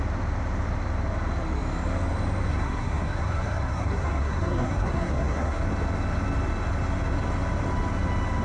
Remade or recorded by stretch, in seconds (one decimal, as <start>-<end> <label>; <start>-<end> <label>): 0.0-2.5 recorded; 2.5-5.6 remade; 5.6-8.4 recorded